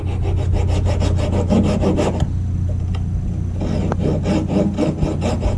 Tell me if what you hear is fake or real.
real